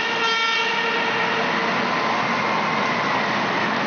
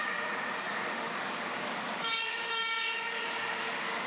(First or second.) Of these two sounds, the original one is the first